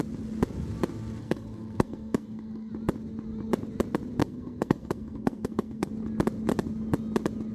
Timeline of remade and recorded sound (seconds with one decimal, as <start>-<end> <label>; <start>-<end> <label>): 0.0-1.2 recorded; 1.2-2.7 remade; 2.7-4.2 recorded; 4.2-5.9 remade; 5.9-7.5 recorded